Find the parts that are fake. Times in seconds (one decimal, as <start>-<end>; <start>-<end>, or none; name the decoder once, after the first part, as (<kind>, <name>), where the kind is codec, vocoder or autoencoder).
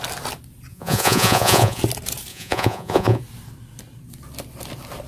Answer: 0.7-1.8 (vocoder, Vocos); 2.3-3.2